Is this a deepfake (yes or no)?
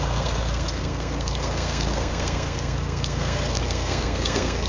yes